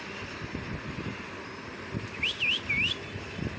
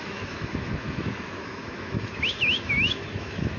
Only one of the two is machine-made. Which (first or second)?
second